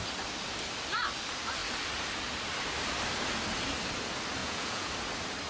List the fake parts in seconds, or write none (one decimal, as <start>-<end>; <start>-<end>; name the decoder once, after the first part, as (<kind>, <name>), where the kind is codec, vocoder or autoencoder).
4.4-4.9 (vocoder, Vocos)